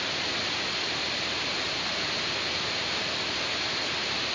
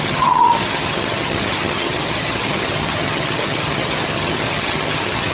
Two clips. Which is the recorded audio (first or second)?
first